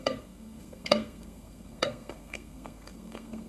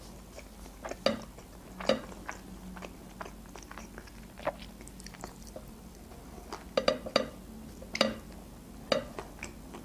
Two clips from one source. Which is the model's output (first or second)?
first